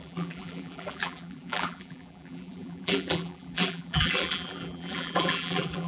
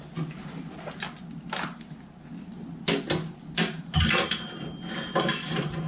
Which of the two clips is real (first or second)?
second